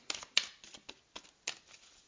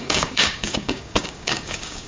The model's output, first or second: second